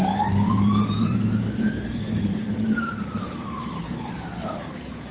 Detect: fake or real fake